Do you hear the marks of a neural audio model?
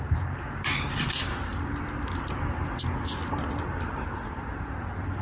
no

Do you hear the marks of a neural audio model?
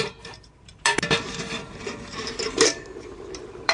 yes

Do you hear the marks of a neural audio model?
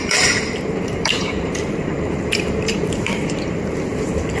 yes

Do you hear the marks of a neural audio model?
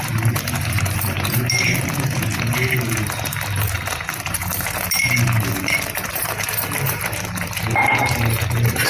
yes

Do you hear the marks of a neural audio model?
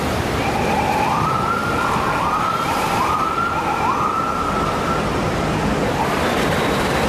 yes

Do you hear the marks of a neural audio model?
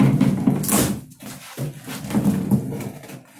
no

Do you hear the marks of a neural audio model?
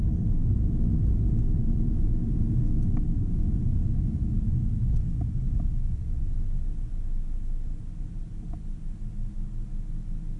no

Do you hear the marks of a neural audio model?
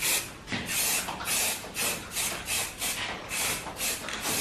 no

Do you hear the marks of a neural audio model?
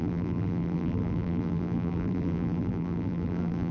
yes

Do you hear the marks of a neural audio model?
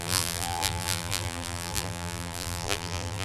yes